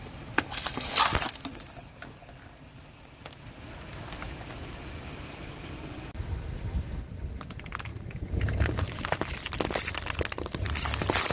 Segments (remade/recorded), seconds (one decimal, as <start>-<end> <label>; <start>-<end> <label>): 0.0-7.9 recorded; 7.9-9.2 remade; 9.2-11.3 recorded